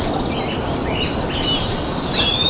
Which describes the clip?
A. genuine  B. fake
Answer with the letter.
A